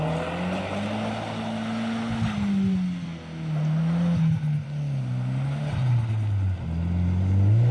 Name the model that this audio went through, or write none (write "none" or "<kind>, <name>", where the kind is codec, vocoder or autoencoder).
none